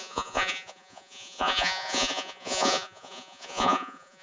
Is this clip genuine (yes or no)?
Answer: no